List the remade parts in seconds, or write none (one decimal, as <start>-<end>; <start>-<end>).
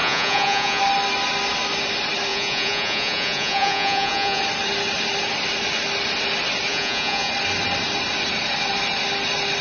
0.0-0.8; 2.3-4.4; 6.7-7.3